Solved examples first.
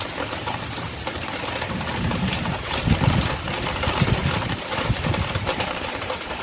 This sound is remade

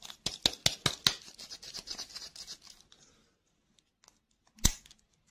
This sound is recorded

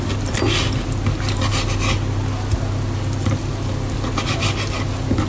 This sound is recorded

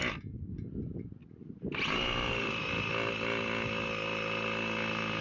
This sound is recorded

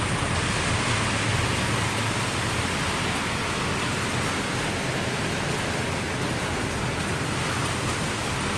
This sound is recorded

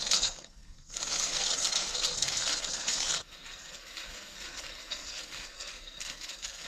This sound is remade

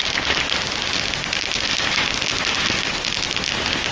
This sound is recorded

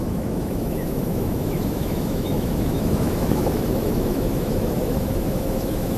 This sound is remade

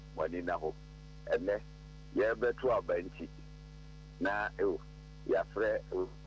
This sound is recorded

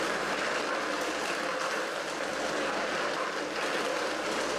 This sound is recorded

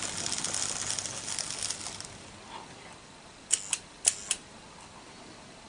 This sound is recorded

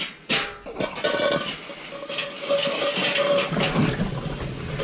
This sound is recorded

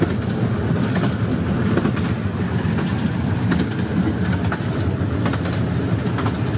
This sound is recorded